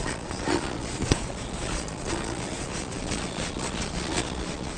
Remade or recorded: remade